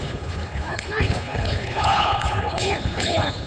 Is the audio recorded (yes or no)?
no